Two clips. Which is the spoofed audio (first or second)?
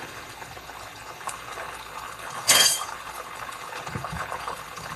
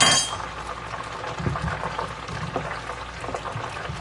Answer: first